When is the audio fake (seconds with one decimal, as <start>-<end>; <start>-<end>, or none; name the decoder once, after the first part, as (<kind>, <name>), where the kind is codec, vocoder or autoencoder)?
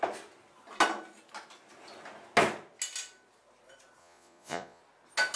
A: 4.0-4.8 (vocoder, Vocos)